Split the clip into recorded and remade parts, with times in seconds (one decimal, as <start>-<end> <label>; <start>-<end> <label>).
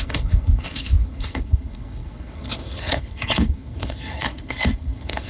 0.0-5.3 remade